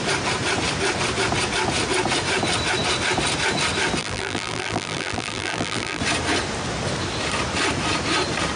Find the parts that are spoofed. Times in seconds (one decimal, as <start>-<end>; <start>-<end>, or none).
4.0-6.0